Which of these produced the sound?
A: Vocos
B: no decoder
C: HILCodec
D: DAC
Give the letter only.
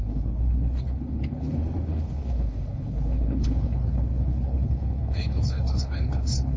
C